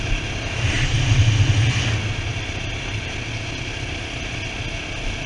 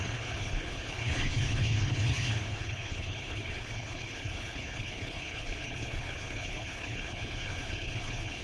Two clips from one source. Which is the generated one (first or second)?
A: second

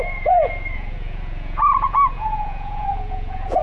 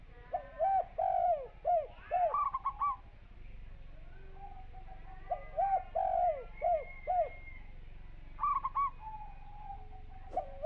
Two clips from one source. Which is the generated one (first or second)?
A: first